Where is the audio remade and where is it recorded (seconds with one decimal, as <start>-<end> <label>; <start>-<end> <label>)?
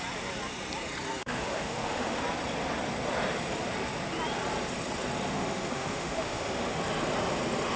0.0-1.2 recorded; 1.2-2.2 remade; 2.2-5.3 recorded; 5.3-6.8 remade; 6.8-7.8 recorded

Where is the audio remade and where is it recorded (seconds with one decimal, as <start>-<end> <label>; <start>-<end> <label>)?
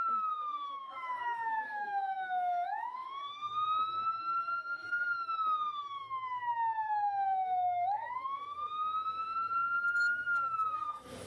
0.0-11.3 remade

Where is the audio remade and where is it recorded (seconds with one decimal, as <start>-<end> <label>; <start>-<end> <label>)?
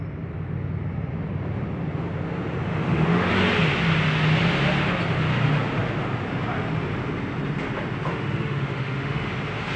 0.0-2.7 recorded; 2.7-3.3 remade; 3.3-8.1 recorded; 8.1-9.3 remade; 9.3-9.8 recorded